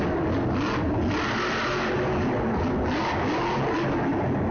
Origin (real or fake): real